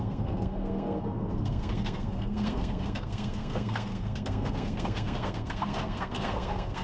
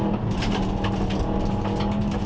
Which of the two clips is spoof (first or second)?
first